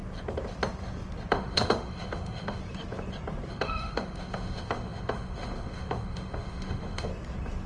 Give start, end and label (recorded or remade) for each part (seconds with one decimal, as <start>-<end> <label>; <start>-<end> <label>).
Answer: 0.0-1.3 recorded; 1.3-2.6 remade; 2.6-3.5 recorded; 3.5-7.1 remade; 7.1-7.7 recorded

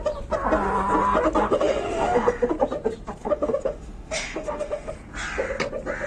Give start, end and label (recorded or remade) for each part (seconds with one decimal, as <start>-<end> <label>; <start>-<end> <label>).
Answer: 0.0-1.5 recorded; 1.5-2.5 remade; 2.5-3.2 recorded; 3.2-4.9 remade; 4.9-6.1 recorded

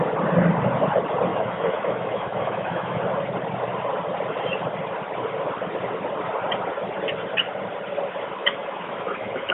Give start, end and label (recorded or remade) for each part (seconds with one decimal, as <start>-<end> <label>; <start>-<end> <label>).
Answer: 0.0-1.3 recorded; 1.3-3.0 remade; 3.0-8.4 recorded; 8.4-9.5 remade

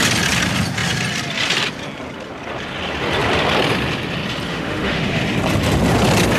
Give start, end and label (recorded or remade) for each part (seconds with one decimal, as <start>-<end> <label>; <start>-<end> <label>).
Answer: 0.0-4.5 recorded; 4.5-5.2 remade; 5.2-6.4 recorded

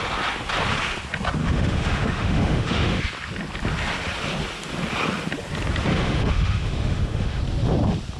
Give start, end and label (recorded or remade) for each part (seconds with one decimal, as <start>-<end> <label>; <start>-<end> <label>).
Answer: 0.0-1.4 recorded; 1.4-3.0 remade; 3.0-5.9 recorded; 5.9-7.4 remade; 7.4-8.2 recorded